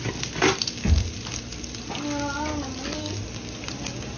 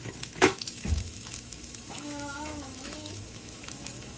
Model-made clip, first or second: second